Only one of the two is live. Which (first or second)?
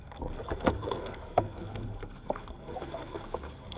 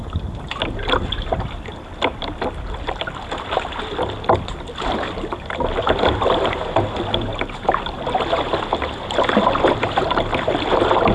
second